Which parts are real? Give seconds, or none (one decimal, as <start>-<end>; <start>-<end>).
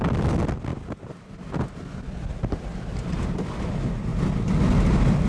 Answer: 0.0-0.7; 1.3-5.3